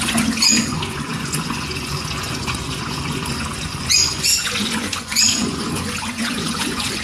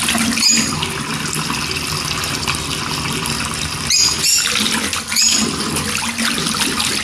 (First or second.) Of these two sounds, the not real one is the first